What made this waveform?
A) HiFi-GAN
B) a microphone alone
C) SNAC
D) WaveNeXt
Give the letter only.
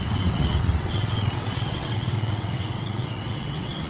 D